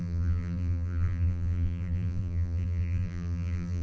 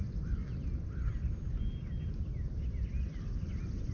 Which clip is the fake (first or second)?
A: first